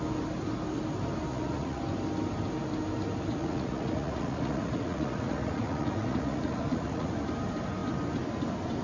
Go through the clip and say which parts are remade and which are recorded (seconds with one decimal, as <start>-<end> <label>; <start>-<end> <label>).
0.0-1.3 recorded; 1.3-1.8 remade; 1.8-3.3 recorded; 3.3-7.1 remade; 7.1-8.8 recorded